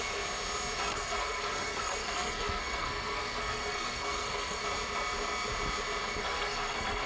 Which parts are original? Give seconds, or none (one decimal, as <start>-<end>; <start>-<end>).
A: 0.0-0.9; 4.6-6.2